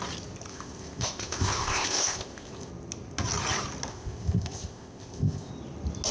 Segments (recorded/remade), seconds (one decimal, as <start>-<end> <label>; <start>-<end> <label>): 0.0-0.5 recorded; 0.5-2.7 remade; 2.7-3.9 recorded; 3.9-5.5 remade; 5.5-6.1 recorded